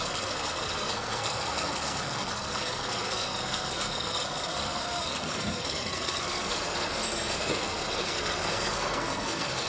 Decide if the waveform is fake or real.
fake